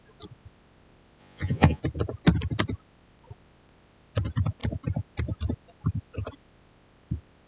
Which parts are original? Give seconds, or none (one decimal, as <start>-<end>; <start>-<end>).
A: 0.0-1.2; 1.8-7.5